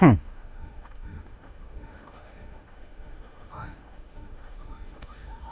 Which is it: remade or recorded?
remade